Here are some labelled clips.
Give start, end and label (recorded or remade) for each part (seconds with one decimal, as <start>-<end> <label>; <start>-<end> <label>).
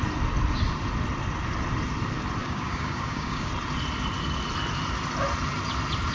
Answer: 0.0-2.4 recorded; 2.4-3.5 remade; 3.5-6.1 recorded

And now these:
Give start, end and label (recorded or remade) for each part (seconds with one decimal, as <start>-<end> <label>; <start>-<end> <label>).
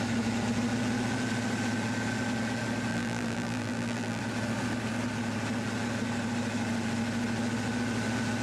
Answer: 0.0-2.9 recorded; 2.9-4.2 remade; 4.2-8.4 recorded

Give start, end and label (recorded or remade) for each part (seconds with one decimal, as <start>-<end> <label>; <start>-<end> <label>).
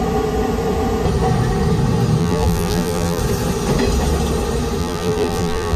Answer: 0.0-2.2 recorded; 2.2-3.2 remade; 3.2-4.8 recorded; 4.8-5.8 remade